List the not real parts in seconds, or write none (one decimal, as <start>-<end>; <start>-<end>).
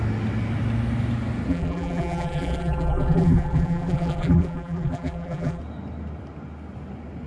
1.5-5.6